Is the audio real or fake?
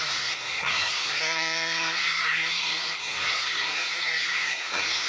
fake